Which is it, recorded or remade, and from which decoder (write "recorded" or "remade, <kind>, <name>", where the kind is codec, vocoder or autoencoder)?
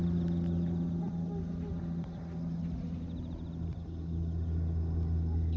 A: recorded